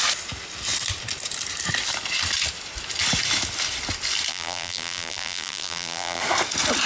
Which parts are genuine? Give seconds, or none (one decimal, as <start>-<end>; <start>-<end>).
0.0-4.3; 6.2-6.9